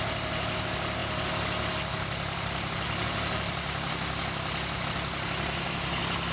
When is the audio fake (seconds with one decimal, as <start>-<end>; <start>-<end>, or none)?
none